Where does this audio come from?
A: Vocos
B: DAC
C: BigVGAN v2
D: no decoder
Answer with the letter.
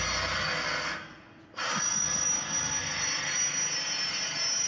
D